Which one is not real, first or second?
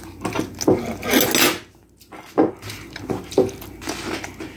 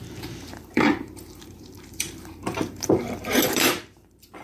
second